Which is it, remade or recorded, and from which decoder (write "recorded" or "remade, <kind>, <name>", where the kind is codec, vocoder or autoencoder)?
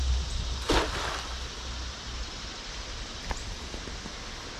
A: recorded